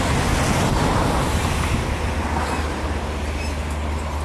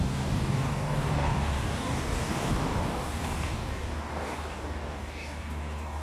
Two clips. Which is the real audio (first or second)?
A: first